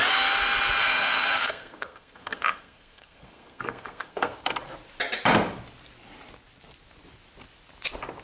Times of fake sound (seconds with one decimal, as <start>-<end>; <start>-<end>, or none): 0.8-4.6

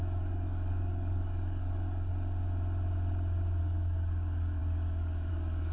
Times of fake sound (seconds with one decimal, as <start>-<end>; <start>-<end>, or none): 0.0-2.1; 3.6-5.7

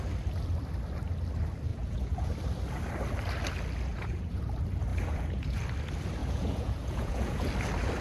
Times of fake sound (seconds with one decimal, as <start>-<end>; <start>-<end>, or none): 1.7-2.3; 3.9-4.4; 4.9-5.6; 6.2-7.5

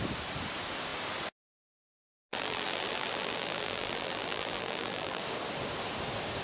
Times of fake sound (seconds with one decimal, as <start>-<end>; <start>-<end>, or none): 2.3-5.2

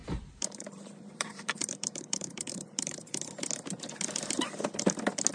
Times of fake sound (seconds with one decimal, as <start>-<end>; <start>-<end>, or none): 0.0-3.2

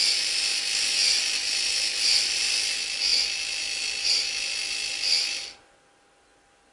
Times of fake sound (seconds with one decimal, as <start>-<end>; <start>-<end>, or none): none